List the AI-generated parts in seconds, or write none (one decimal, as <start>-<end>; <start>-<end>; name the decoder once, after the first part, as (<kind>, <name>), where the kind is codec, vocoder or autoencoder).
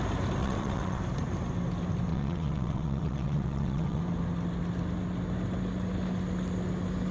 0.4-1.0 (vocoder, WaveNeXt); 2.1-4.0